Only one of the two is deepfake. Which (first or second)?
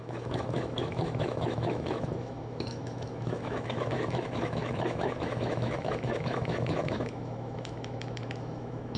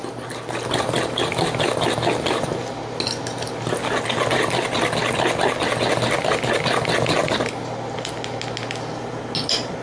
first